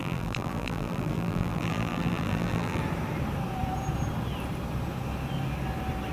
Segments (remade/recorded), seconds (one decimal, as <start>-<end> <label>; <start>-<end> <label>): 0.0-2.8 remade; 2.8-6.1 recorded